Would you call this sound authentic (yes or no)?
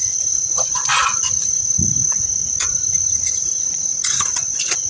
no